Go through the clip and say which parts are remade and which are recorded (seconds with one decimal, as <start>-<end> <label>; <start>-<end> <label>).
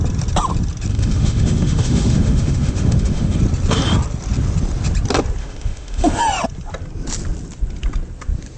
0.0-0.9 recorded; 0.9-3.4 remade; 3.4-5.4 recorded; 5.4-6.2 remade; 6.2-8.6 recorded